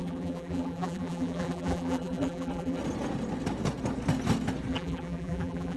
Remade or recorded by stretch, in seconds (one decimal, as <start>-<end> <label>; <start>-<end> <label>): 0.0-2.8 remade; 2.8-4.7 recorded; 4.7-5.8 remade